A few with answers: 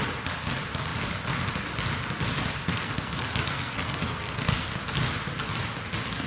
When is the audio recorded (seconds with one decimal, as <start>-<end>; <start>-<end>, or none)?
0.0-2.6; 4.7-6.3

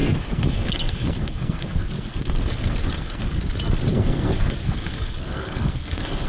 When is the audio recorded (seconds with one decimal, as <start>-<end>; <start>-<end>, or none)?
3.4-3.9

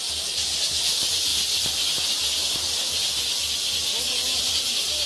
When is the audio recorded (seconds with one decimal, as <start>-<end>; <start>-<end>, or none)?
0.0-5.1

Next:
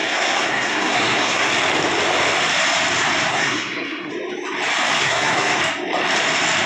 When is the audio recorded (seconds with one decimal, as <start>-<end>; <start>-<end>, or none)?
1.5-3.3; 4.1-5.0; 5.6-6.7

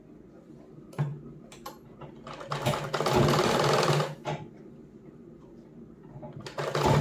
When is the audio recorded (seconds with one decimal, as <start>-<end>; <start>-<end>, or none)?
0.0-7.0

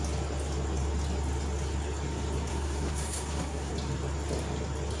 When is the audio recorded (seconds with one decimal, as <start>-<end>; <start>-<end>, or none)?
0.0-2.5; 3.7-5.0

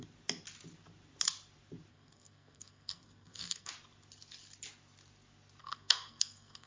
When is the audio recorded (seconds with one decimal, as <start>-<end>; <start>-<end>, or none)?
0.0-1.9; 3.7-5.6